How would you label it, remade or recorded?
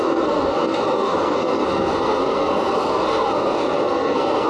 remade